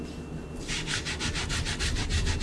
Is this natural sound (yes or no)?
yes